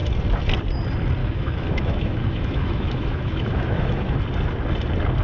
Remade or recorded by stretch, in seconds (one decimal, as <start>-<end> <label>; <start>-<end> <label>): 0.0-1.2 recorded; 1.2-4.2 remade; 4.2-5.2 recorded